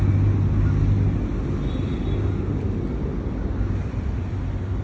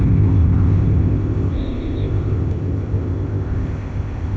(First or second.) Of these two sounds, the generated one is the second